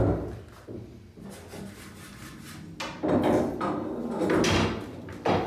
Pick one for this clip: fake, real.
real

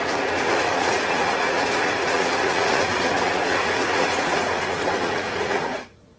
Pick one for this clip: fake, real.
fake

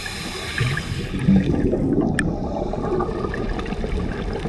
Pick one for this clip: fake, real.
real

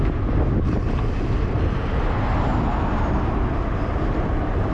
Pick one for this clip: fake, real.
real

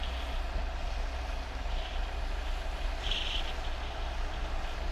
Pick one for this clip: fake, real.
real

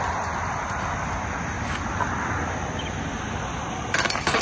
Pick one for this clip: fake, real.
real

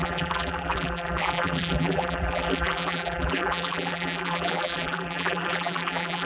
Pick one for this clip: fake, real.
fake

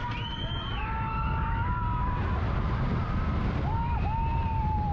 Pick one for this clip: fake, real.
real